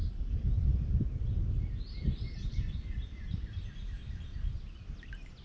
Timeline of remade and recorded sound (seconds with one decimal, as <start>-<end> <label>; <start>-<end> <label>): 0.0-5.4 recorded